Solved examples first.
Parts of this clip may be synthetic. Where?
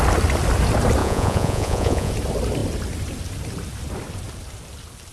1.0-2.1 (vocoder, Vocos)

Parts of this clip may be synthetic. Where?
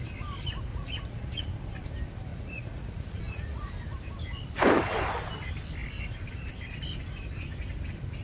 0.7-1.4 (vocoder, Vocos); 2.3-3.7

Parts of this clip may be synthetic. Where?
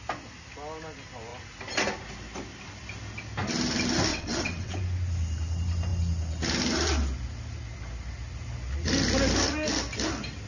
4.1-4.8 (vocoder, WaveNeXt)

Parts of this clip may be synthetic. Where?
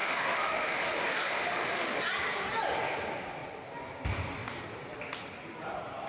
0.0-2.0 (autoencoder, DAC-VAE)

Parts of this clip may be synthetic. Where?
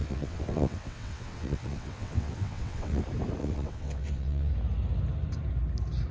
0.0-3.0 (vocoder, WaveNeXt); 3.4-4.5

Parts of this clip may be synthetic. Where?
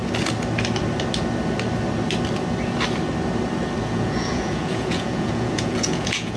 3.8-6.4 (vocoder, Vocos)